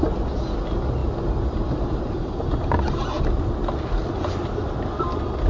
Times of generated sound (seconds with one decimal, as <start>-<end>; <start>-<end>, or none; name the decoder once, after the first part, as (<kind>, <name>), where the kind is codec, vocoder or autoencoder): none